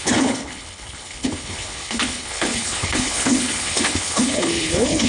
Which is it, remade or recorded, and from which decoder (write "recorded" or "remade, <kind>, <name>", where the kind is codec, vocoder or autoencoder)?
remade, codec, HILCodec